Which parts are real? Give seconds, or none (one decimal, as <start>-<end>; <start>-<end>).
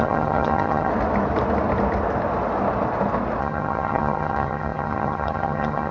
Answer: 0.9-3.4